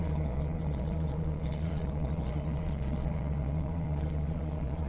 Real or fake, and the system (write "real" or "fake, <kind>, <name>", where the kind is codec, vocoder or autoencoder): fake, vocoder, Vocos